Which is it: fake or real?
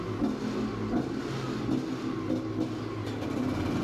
real